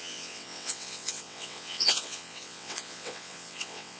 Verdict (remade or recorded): remade